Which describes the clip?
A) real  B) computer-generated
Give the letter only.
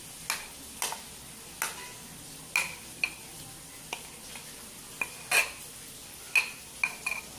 A